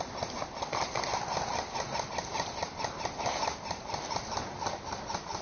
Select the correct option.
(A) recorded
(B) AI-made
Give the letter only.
A